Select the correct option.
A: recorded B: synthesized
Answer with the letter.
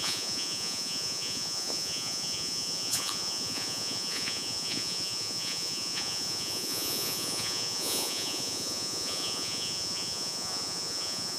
B